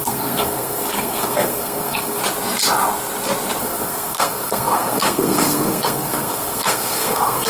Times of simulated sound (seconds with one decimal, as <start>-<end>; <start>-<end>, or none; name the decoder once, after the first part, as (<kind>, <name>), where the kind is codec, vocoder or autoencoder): 0.0-2.2 (codec, SNAC); 3.6-7.5